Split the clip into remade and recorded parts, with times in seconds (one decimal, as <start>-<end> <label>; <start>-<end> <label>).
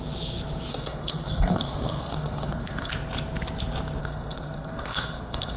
0.0-0.7 recorded; 0.7-2.9 remade; 2.9-4.0 recorded; 4.0-5.6 remade